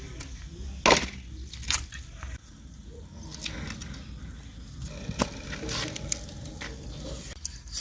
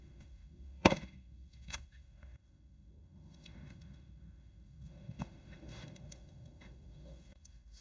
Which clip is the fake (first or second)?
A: second